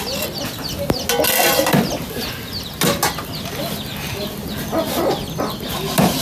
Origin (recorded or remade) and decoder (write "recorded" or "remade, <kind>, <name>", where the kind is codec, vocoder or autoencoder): recorded